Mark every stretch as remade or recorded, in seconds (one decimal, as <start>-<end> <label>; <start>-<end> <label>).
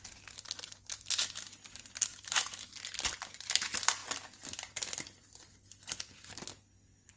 0.0-2.1 recorded; 2.1-2.7 remade; 2.7-7.2 recorded